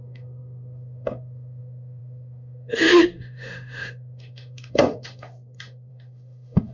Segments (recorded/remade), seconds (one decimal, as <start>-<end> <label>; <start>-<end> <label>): 0.0-6.7 remade